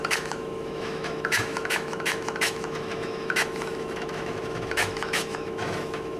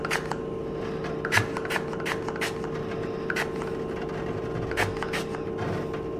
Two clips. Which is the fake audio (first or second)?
first